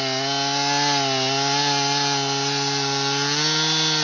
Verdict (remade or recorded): recorded